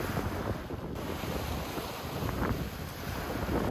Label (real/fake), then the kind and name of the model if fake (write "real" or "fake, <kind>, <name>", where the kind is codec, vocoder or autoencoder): real